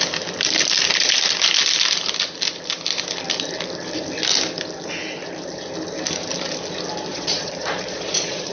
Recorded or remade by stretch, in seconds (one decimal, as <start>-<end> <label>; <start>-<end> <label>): 0.0-7.1 recorded; 7.1-8.5 remade